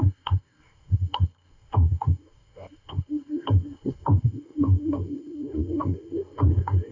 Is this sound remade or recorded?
remade